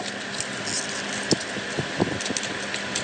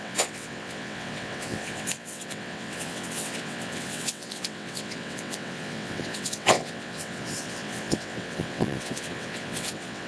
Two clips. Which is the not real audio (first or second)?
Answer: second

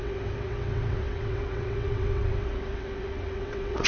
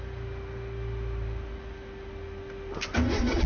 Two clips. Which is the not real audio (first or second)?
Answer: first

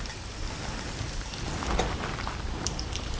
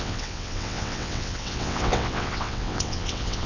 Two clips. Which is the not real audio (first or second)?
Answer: second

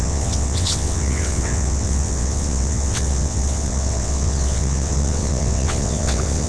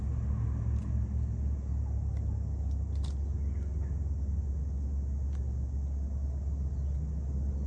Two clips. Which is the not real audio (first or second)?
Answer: first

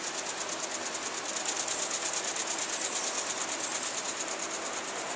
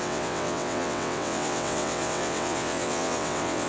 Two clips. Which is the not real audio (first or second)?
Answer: second